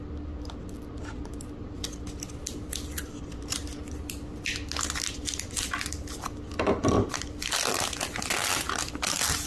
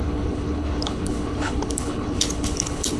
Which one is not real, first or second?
second